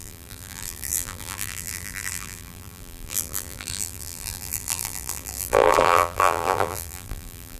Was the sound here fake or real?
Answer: fake